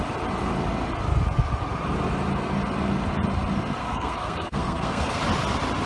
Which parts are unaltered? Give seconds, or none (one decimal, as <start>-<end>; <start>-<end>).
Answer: 0.0-3.8; 5.2-5.9

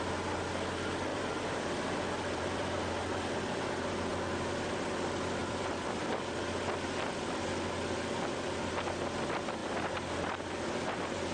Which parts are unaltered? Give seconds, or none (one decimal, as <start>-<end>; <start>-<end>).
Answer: 0.0-1.1; 2.9-5.4; 6.1-9.6; 10.7-11.3

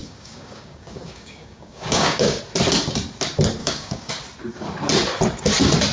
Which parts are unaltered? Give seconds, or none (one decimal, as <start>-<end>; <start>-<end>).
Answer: 2.4-3.6; 4.1-5.9

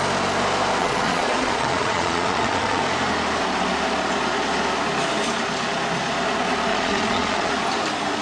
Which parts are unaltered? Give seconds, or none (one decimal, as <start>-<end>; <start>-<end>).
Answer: 0.0-0.8; 2.8-6.7; 7.5-8.2